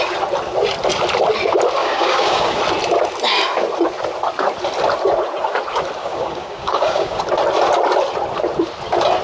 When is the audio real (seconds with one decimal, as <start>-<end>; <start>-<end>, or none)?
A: 0.0-1.8; 2.6-6.0; 7.2-9.2